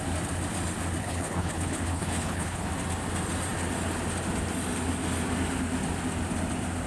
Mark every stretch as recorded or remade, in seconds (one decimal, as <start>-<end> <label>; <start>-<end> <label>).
0.0-1.0 recorded; 1.0-2.7 remade; 2.7-6.9 recorded